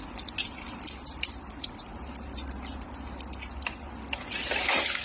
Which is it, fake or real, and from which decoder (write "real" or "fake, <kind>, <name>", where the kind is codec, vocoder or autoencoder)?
real